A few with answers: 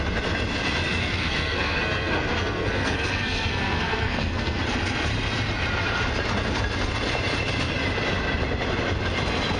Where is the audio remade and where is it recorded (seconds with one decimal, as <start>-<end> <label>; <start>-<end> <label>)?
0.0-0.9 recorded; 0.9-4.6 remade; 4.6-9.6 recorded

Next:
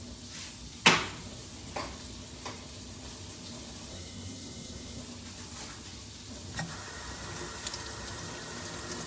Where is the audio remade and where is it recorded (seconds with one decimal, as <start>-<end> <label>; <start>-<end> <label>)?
0.0-3.9 recorded; 3.9-5.0 remade; 5.0-9.1 recorded

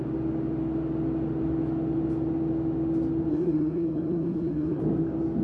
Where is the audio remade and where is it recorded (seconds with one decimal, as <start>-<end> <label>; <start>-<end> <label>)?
0.0-3.3 recorded; 3.3-4.8 remade; 4.8-5.4 recorded

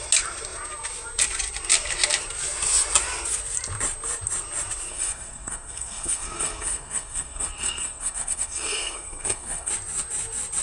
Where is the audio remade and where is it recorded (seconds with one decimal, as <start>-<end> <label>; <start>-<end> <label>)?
0.0-4.9 recorded; 4.9-9.7 remade; 9.7-10.6 recorded

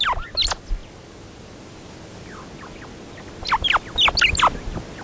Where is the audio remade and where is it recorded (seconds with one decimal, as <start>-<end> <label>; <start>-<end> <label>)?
0.0-5.0 recorded

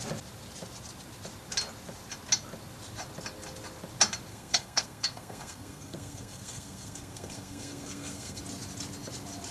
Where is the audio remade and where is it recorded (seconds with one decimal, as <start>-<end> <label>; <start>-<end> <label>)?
0.0-4.3 recorded; 4.3-8.4 remade; 8.4-9.5 recorded

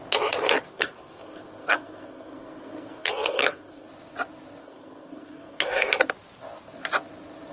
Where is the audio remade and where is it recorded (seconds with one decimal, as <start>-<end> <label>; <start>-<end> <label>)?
0.0-0.7 recorded; 0.7-3.9 remade; 3.9-4.6 recorded; 4.6-5.9 remade; 5.9-7.5 recorded

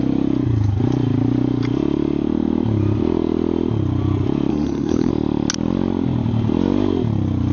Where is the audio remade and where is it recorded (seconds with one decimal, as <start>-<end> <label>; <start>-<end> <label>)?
0.0-4.5 recorded; 4.5-5.1 remade; 5.1-7.5 recorded